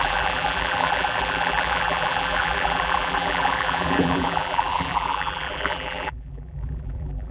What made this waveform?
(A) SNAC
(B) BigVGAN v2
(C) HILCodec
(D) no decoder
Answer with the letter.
B